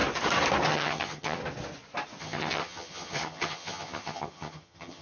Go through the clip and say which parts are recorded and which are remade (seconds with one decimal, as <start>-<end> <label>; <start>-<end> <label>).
0.0-0.7 recorded; 0.7-1.4 remade; 1.4-2.2 recorded; 2.2-5.0 remade